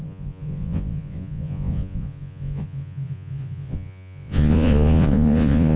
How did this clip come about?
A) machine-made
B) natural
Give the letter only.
A